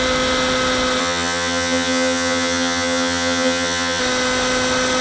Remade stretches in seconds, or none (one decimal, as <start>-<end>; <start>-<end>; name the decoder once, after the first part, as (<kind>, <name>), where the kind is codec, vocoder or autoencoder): 1.0-4.0 (vocoder, HiFi-GAN)